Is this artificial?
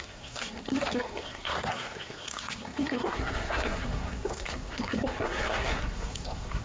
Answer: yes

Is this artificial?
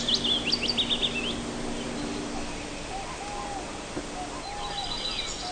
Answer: no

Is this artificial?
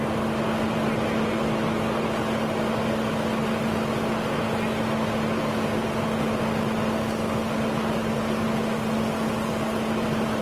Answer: no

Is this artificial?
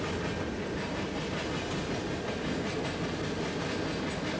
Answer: no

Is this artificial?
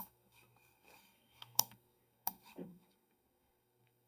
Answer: yes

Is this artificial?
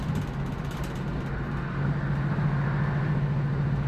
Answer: no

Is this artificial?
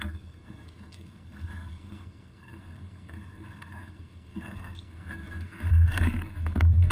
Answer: yes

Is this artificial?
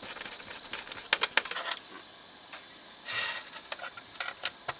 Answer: no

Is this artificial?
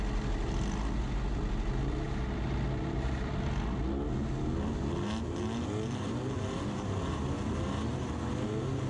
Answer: no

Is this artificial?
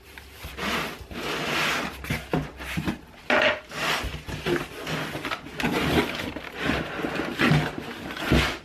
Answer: no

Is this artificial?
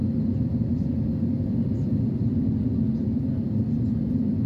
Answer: no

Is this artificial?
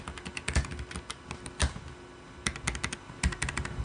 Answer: no